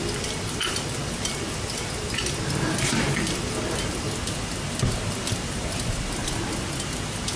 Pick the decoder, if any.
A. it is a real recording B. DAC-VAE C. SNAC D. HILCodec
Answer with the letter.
A